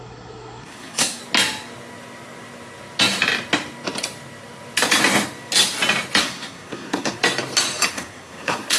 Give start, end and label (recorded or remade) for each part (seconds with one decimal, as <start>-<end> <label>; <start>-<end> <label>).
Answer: 0.0-1.2 remade; 1.2-6.2 recorded; 6.2-7.2 remade; 7.2-7.9 recorded; 7.9-8.8 remade